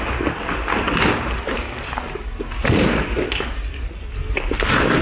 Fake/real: real